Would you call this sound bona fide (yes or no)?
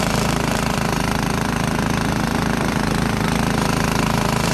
no